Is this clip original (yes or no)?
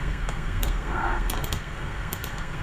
no